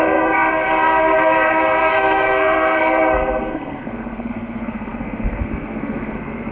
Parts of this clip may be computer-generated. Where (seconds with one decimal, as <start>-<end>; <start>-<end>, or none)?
0.0-6.5